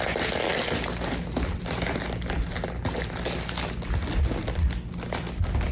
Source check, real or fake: real